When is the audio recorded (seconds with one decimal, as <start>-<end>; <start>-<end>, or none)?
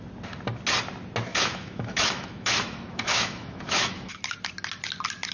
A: 0.0-1.3; 4.2-5.3